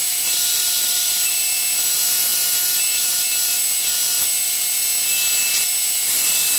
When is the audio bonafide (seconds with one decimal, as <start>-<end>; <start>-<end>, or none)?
1.4-6.6